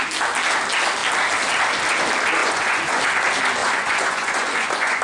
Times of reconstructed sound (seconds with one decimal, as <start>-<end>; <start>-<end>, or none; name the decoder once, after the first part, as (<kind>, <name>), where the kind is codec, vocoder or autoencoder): 2.4-3.0 (vocoder, Vocos); 3.6-5.0